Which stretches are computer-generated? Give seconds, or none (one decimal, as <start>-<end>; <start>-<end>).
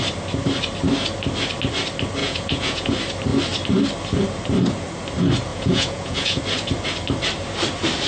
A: 2.2-2.9; 5.5-6.4